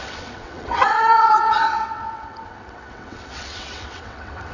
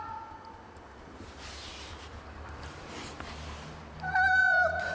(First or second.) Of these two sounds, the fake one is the first